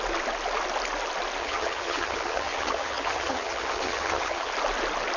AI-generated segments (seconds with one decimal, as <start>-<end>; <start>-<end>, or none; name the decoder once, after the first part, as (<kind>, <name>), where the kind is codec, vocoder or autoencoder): 1.4-4.5 (vocoder, HiFi-GAN)